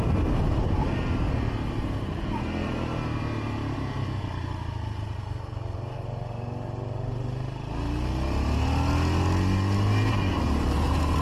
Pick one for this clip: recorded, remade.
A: recorded